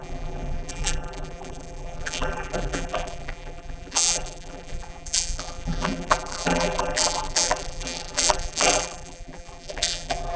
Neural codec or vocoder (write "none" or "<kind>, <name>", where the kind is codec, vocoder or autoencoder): vocoder, BigVGAN v2